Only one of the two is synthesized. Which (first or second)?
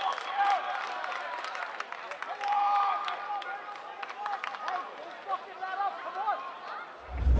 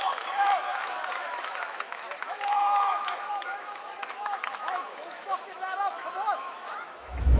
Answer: second